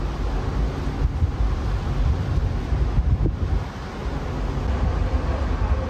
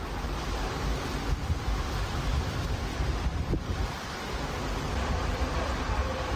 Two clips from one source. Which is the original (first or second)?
first